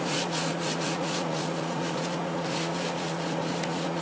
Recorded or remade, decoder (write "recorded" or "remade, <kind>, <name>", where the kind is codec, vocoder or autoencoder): remade, vocoder, Vocos